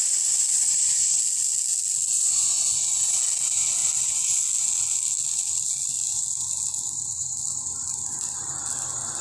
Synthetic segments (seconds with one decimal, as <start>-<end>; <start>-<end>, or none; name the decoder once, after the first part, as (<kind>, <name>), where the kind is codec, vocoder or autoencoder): 0.5-1.2 (vocoder, Vocos)